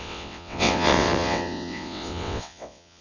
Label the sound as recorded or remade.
remade